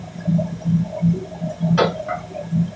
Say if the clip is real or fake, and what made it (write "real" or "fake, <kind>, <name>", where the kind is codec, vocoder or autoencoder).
real